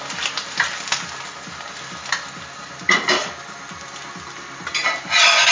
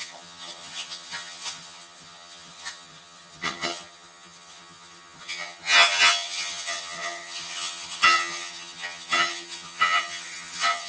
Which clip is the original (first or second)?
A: first